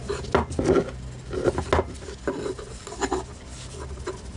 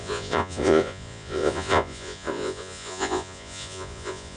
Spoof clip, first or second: second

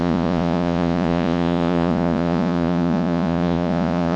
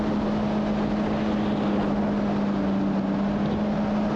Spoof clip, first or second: first